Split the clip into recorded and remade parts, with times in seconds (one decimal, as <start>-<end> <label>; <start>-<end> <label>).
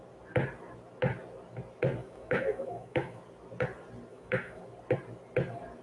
0.0-2.0 recorded; 2.0-3.2 remade; 3.2-4.1 recorded; 4.1-4.6 remade; 4.6-5.8 recorded